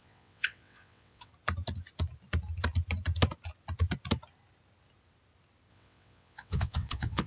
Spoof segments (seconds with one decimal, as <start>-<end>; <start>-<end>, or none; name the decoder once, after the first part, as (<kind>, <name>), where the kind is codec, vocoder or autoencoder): 0.0-1.3 (vocoder, WaveNeXt); 5.7-7.3